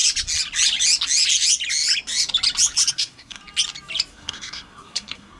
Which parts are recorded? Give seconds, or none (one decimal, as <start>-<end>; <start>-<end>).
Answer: 0.0-2.9; 3.4-4.1